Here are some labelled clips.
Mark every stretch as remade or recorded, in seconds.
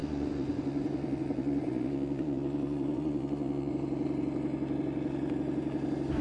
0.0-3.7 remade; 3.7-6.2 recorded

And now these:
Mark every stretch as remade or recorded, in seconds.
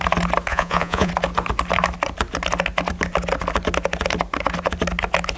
0.0-0.5 recorded; 0.5-1.1 remade; 1.1-5.4 recorded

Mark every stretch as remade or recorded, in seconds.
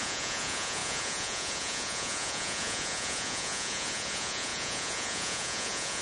0.0-6.0 remade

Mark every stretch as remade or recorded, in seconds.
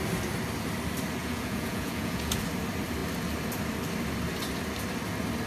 0.0-1.2 recorded; 1.2-2.4 remade; 2.4-5.5 recorded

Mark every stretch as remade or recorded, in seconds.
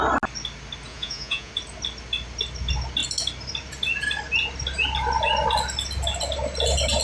0.0-0.9 recorded; 0.9-1.5 remade; 1.5-7.0 recorded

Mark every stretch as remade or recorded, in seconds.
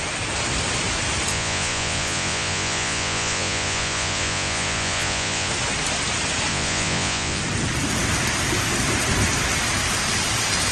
0.0-1.3 recorded; 1.3-5.5 remade; 5.5-6.5 recorded; 6.5-7.4 remade; 7.4-10.7 recorded